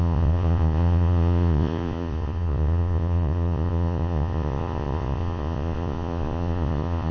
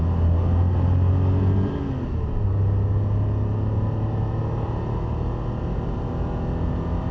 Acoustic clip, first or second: second